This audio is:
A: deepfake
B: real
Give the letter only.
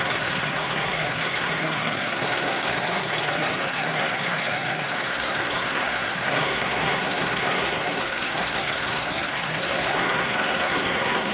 A